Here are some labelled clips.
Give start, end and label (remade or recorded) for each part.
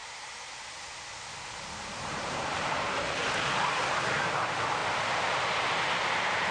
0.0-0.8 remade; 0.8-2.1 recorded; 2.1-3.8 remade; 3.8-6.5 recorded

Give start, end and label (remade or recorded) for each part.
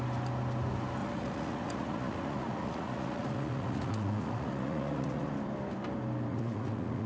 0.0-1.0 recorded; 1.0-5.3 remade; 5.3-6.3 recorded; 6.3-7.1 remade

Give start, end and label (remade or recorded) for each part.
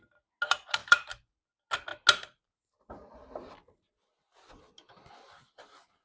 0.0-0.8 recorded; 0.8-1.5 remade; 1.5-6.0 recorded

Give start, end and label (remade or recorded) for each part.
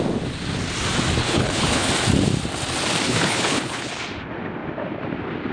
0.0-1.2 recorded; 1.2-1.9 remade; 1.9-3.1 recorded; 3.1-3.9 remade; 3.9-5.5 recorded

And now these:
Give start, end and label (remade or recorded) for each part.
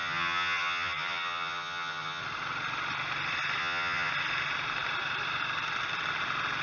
0.0-2.2 remade; 2.2-3.6 recorded; 3.6-4.1 remade; 4.1-6.6 recorded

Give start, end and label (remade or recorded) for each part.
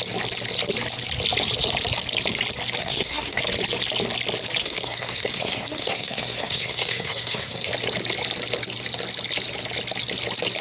0.0-2.8 recorded; 2.8-3.4 remade; 3.4-4.6 recorded; 4.6-7.7 remade; 7.7-10.6 recorded